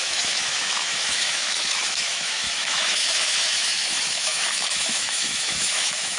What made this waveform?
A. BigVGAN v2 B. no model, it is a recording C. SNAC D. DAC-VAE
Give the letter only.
D